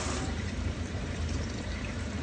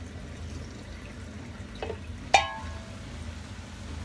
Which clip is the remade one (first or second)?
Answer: first